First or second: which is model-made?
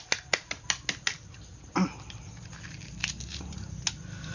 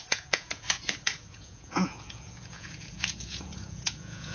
second